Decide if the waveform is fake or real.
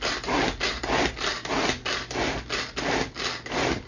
real